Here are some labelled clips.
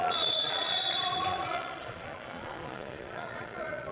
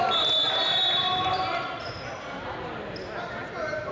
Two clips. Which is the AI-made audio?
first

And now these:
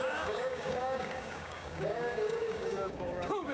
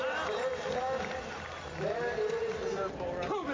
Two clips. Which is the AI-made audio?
first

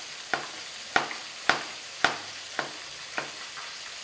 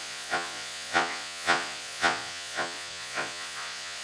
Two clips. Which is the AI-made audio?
second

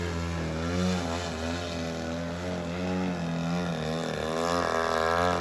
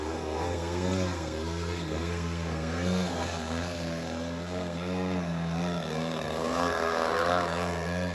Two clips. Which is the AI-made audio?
second